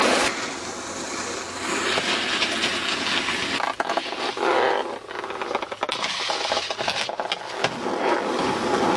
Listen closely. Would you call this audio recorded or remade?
recorded